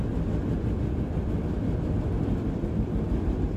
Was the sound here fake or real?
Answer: real